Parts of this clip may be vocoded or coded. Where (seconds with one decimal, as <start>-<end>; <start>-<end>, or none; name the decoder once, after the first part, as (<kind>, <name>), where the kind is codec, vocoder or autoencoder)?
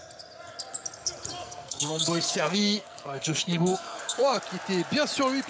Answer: 1.4-4.4 (codec, SNAC)